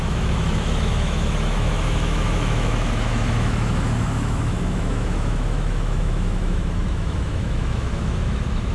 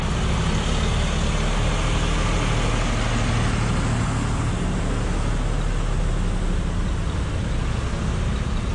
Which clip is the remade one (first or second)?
first